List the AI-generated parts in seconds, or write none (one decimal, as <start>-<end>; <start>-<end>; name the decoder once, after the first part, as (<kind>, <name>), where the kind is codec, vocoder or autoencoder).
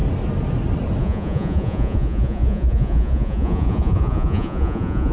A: 1.0-5.1 (vocoder, Vocos)